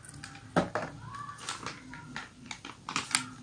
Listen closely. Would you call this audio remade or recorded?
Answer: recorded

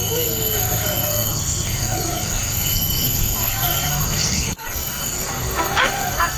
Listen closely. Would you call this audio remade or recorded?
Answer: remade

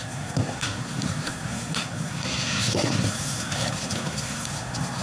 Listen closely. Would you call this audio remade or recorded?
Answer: remade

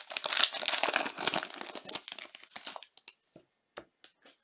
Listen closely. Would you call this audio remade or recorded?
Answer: recorded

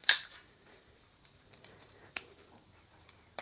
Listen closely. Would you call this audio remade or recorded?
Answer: remade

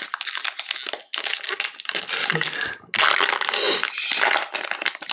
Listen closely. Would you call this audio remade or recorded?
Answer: recorded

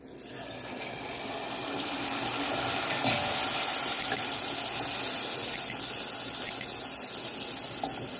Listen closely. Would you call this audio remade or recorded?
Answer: recorded